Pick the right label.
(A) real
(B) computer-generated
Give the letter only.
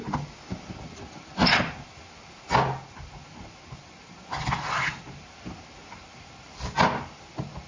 A